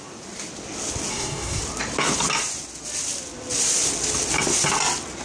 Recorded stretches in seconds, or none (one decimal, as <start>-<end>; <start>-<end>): 0.0-1.1; 1.6-5.2